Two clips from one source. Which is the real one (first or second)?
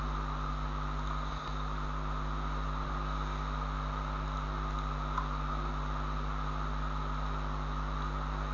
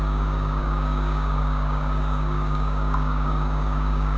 first